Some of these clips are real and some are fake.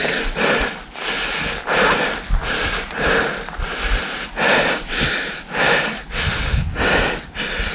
real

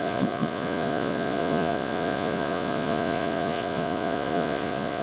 fake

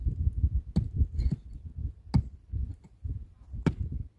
real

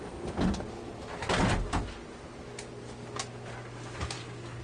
real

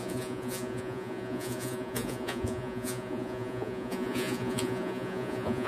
fake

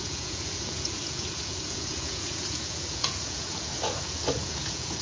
fake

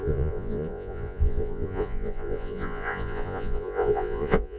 fake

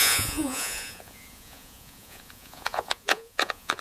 fake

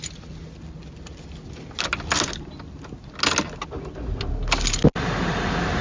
real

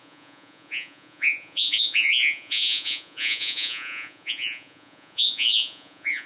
fake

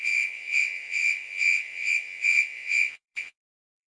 fake